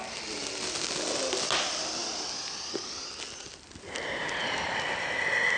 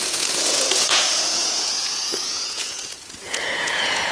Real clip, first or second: first